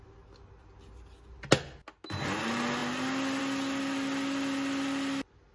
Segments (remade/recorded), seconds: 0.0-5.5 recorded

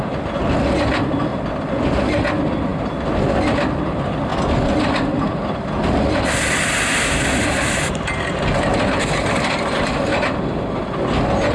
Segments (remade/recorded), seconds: 0.0-11.5 recorded

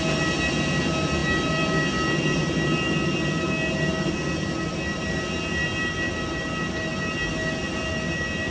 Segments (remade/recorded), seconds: 0.0-8.5 recorded

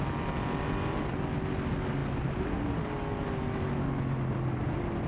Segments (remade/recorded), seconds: 0.0-5.1 recorded

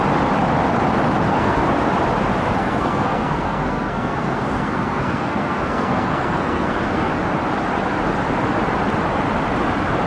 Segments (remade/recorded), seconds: 0.0-1.3 recorded; 1.3-1.9 remade; 1.9-2.6 recorded; 2.6-7.1 remade; 7.1-10.1 recorded

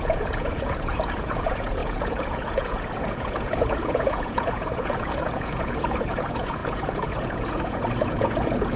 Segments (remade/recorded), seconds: 0.0-8.8 remade

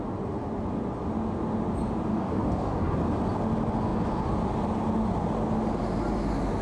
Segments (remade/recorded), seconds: 0.0-2.1 recorded; 2.1-3.0 remade; 3.0-6.6 recorded